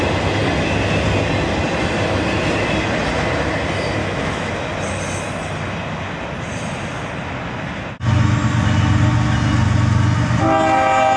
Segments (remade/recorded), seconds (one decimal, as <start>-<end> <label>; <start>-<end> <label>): 0.0-4.0 recorded; 4.0-4.5 remade; 4.5-11.2 recorded